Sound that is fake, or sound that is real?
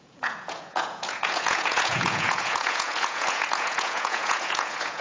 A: fake